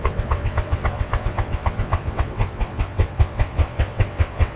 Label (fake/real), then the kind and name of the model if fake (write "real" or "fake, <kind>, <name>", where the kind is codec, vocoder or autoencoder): fake, vocoder, WaveNeXt